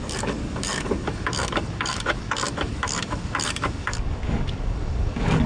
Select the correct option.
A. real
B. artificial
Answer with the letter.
B